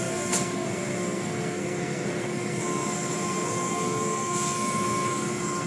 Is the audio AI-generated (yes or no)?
yes